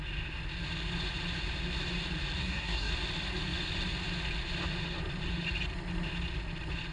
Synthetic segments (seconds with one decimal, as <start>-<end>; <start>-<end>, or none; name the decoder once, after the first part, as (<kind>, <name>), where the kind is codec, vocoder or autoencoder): 2.4-2.9 (codec, SNAC)